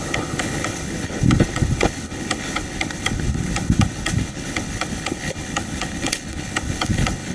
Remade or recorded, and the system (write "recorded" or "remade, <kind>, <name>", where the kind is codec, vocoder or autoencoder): remade, codec, HILCodec